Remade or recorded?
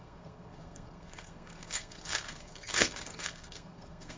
remade